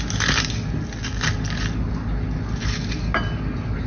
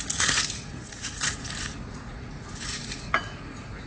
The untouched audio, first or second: first